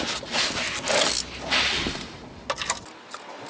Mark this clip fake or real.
real